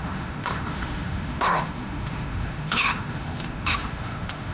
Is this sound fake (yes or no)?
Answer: yes